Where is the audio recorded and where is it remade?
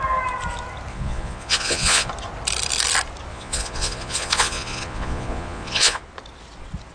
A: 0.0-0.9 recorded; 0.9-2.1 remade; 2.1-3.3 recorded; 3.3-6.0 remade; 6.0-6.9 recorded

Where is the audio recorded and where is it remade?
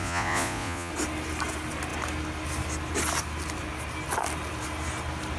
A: 0.0-0.9 remade; 0.9-5.4 recorded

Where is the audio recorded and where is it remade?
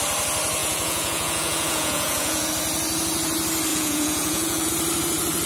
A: 0.0-0.6 recorded; 0.6-2.5 remade; 2.5-3.7 recorded; 3.7-4.7 remade; 4.7-5.5 recorded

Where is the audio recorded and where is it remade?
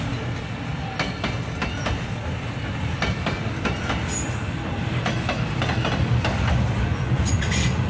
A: 0.0-6.9 recorded; 6.9-7.9 remade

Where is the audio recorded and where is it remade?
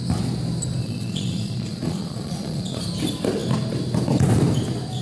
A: 0.0-0.8 recorded; 0.8-2.8 remade; 2.8-5.0 recorded